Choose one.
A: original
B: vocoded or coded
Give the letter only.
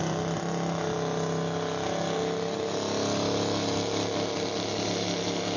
A